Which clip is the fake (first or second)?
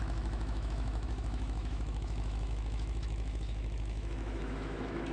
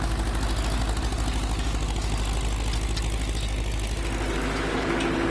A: first